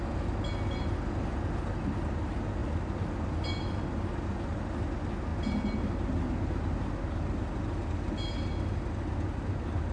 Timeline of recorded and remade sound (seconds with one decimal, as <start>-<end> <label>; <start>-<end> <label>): 0.0-9.9 recorded